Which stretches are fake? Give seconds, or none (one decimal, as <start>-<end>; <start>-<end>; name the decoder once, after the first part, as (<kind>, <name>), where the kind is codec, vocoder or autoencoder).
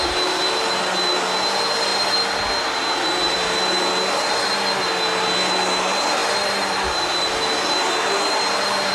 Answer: none